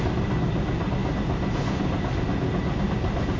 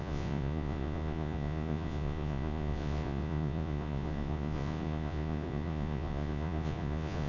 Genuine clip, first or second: first